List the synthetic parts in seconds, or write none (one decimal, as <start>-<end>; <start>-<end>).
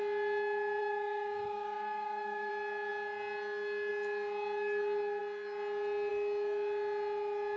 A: 0.8-2.5